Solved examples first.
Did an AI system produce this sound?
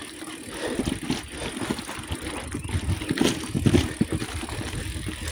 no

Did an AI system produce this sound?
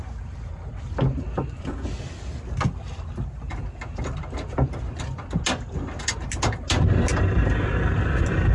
no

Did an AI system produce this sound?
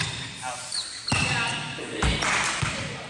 no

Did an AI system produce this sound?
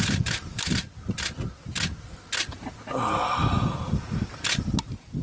no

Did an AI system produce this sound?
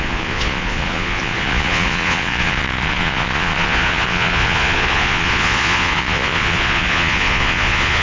yes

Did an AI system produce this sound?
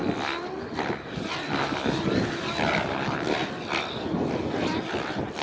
no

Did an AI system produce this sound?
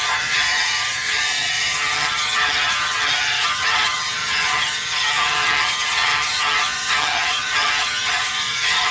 yes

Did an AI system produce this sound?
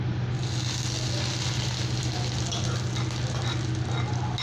no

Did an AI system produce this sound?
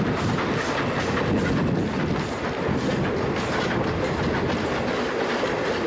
no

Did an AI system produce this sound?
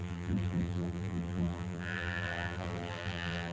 yes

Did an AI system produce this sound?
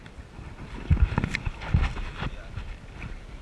no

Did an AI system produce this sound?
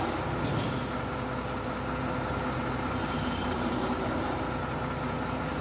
no